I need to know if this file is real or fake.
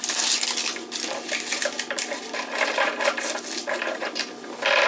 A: real